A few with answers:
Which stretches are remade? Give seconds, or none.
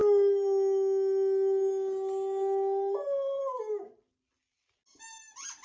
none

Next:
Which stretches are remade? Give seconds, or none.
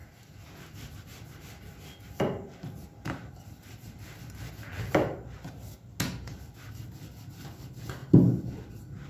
none